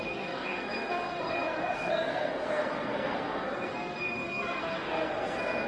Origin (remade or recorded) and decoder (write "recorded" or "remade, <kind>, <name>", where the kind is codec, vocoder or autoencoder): remade, codec, SNAC